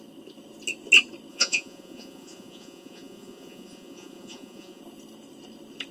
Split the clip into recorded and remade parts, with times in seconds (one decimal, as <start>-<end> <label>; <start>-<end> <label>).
0.0-1.3 recorded; 1.3-4.8 remade; 4.8-5.9 recorded